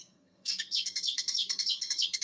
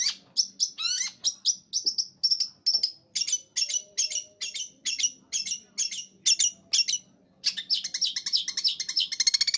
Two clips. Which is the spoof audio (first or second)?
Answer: first